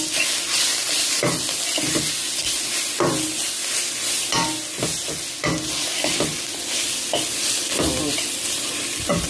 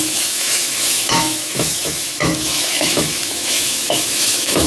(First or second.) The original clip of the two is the first